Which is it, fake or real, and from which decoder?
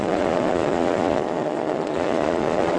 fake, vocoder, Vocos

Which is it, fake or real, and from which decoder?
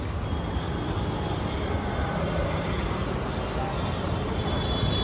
real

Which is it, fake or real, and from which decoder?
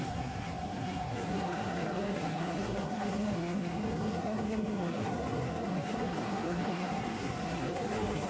fake, codec, SNAC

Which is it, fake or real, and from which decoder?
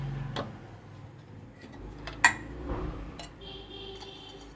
real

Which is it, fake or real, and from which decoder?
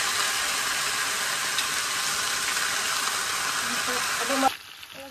real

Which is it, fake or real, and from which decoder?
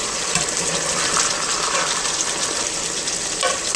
real